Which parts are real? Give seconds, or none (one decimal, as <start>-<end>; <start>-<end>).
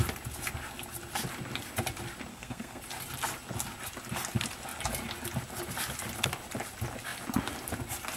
0.0-2.3; 2.8-8.2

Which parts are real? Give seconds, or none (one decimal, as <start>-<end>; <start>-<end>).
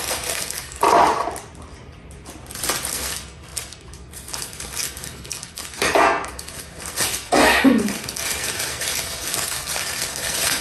0.8-2.9